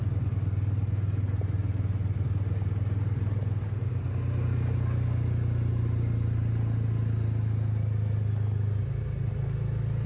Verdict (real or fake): real